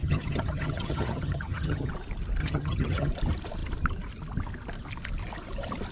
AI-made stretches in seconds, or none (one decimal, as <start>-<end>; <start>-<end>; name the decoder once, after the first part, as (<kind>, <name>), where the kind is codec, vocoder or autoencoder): 0.0-1.9 (vocoder, HiFi-GAN); 2.4-3.1